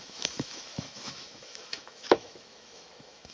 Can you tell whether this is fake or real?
fake